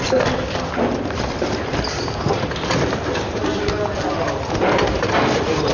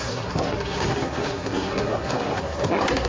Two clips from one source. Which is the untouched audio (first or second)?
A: first